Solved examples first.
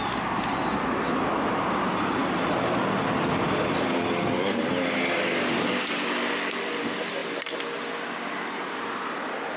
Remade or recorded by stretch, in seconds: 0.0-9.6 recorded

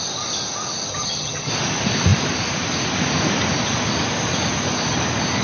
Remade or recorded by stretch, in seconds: 0.0-0.9 recorded; 0.9-1.5 remade; 1.5-5.4 recorded

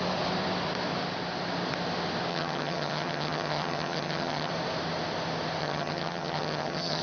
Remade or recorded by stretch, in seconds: 0.0-2.3 recorded; 2.3-4.5 remade; 4.5-5.6 recorded; 5.6-7.0 remade

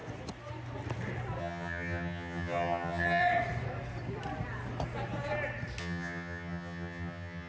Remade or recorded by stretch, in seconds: 0.0-1.4 recorded; 1.4-3.2 remade; 3.2-5.8 recorded; 5.8-7.5 remade

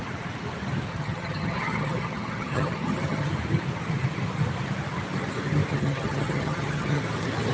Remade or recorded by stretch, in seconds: 0.0-0.9 recorded; 0.9-3.3 remade; 3.3-5.7 recorded; 5.7-7.0 remade; 7.0-7.5 recorded